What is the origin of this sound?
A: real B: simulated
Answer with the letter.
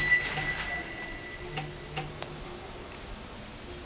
A